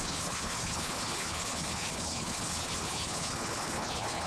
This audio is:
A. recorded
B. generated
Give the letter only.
B